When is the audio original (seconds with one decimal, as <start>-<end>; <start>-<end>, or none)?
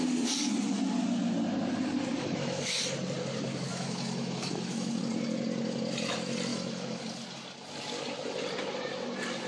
0.0-2.1; 2.7-3.7; 5.0-6.5; 7.0-9.5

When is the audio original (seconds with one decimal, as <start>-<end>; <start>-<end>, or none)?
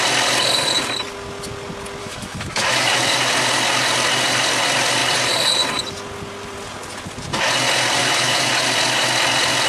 0.0-2.0; 3.0-8.0; 8.5-9.7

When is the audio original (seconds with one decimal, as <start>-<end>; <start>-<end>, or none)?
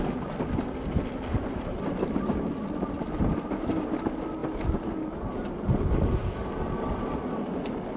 0.0-8.0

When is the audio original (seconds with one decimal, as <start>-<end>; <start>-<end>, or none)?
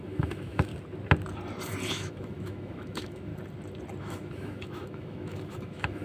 0.7-1.9; 3.3-4.0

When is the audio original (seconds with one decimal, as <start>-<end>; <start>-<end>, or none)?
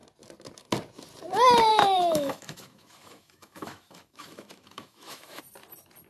0.0-1.7; 5.4-6.1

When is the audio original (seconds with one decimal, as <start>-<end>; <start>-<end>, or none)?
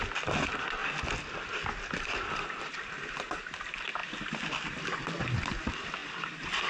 0.0-6.7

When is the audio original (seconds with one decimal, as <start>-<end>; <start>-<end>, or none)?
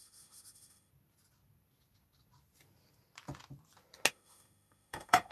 0.9-4.1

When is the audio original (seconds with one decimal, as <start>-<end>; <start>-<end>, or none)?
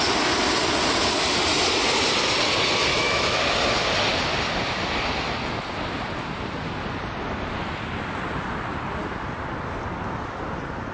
0.0-2.9; 3.4-10.9